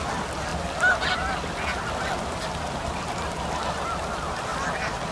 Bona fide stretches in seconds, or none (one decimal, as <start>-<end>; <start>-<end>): 0.0-5.1